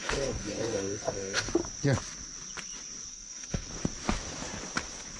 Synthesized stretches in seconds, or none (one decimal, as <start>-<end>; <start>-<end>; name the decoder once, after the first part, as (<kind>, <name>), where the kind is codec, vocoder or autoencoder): 0.0-1.5 (codec, SNAC); 3.1-3.7